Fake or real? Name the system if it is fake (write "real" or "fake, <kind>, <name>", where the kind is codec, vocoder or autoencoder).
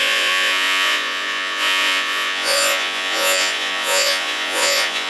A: fake, vocoder, Vocos